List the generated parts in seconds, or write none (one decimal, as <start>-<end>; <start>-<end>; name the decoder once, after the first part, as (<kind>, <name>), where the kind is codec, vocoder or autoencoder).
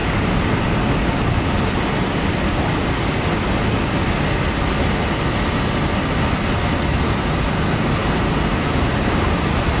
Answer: none